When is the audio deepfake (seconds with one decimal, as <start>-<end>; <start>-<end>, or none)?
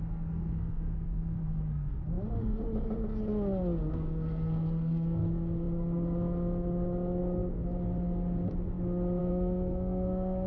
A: 0.0-2.0; 3.9-5.2; 9.2-10.5